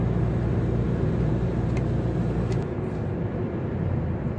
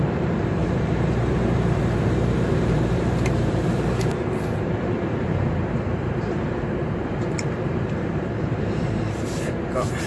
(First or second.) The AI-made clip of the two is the second